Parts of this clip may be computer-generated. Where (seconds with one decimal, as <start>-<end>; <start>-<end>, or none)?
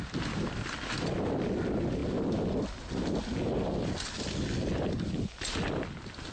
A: none